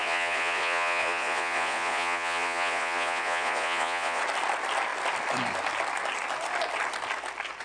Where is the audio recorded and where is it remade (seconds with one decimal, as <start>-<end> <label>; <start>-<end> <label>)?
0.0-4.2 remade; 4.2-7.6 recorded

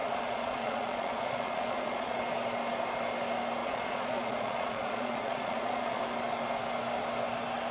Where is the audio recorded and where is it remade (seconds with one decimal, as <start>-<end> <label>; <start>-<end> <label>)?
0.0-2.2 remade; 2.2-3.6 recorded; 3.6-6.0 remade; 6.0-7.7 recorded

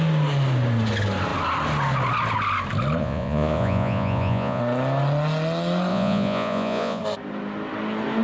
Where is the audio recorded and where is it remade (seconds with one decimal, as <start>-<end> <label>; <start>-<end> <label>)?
0.0-3.0 recorded; 3.0-4.6 remade; 4.6-5.9 recorded; 5.9-7.0 remade; 7.0-8.2 recorded